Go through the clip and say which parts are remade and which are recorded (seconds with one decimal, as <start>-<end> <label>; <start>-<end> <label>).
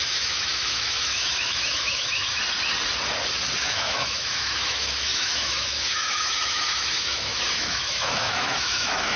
0.0-2.4 remade; 2.4-3.6 recorded; 3.6-9.2 remade